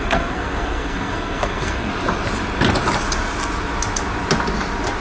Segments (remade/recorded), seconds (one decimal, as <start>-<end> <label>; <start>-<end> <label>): 0.0-1.9 remade; 1.9-5.0 recorded